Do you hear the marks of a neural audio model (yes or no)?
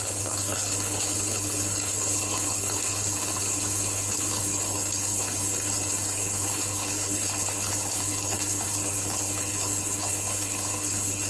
yes